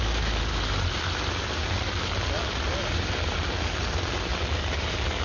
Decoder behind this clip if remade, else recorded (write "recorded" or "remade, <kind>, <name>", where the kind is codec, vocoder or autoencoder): recorded